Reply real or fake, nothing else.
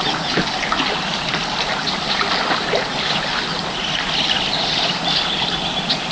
real